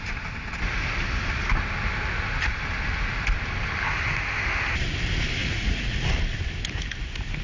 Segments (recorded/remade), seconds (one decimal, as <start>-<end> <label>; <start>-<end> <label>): 0.0-5.4 recorded; 5.4-6.1 remade; 6.1-7.4 recorded